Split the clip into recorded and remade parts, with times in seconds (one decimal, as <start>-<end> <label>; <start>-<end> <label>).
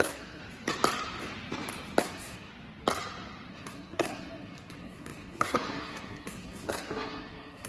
0.0-0.4 remade; 0.4-2.0 recorded; 2.0-2.5 remade; 2.5-3.5 recorded; 3.5-7.7 remade